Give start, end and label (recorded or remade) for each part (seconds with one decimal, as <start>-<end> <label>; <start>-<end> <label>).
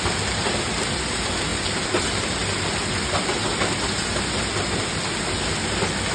0.0-6.1 recorded